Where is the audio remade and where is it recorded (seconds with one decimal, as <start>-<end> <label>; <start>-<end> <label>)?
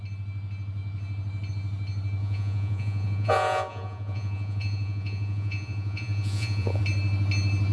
0.0-2.2 recorded; 2.2-6.8 remade; 6.8-7.7 recorded